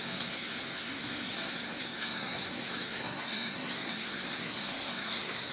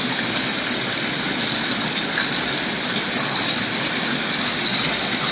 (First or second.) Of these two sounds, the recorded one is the second